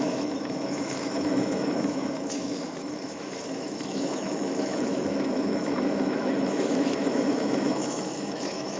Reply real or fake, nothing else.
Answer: fake